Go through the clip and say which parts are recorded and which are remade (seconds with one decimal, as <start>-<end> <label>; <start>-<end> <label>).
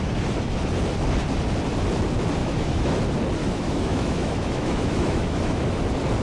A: 0.0-2.4 recorded; 2.4-3.0 remade; 3.0-3.4 recorded; 3.4-5.8 remade; 5.8-6.2 recorded